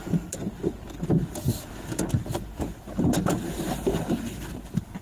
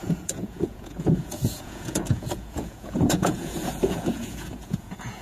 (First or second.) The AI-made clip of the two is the second